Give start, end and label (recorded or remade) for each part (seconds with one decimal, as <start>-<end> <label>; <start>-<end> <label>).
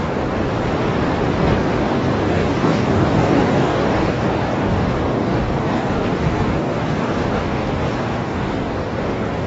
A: 0.0-0.5 remade; 0.5-1.8 recorded; 1.8-9.5 remade